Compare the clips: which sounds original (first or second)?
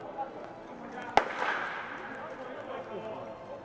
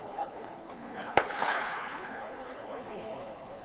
first